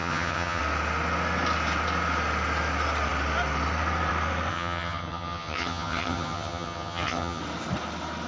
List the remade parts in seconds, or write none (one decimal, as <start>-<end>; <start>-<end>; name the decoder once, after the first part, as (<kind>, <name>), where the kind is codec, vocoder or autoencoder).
0.0-0.6 (vocoder, HiFi-GAN); 4.5-7.4